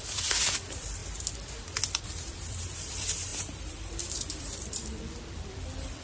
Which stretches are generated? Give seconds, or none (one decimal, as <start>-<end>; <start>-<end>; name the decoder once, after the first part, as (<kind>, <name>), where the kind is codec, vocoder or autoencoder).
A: 0.0-1.0 (vocoder, BigVGAN v2); 1.9-6.0